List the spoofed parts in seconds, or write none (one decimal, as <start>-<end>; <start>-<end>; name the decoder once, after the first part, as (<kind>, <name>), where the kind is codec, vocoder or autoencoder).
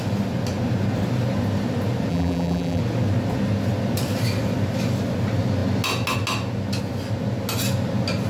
2.1-2.8 (vocoder, BigVGAN v2)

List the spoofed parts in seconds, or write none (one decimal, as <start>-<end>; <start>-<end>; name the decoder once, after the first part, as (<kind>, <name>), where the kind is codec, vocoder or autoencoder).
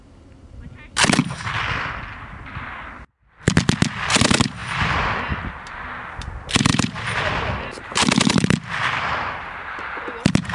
4.6-5.5 (vocoder, BigVGAN v2); 6.7-9.5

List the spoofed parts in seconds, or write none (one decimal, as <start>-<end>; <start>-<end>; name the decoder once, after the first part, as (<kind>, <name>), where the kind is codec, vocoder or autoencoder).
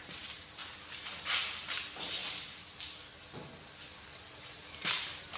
0.0-0.6 (vocoder, BigVGAN v2); 1.2-2.2